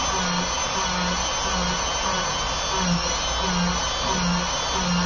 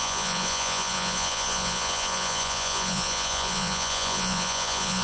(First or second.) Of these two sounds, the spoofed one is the second